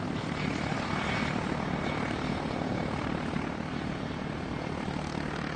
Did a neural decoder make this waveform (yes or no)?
no